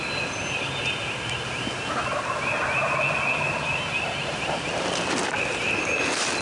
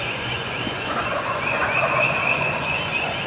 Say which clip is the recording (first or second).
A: first